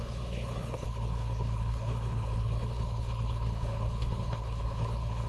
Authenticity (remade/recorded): remade